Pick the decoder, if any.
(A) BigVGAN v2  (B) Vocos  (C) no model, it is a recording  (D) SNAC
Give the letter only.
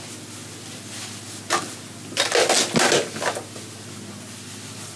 C